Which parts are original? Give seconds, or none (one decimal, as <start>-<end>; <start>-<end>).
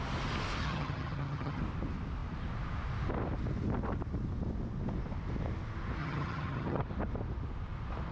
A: 0.0-0.6; 1.6-6.0; 6.8-8.1